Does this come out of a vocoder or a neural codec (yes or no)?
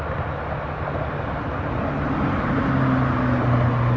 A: no